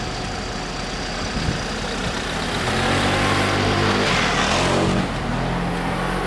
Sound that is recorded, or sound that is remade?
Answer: recorded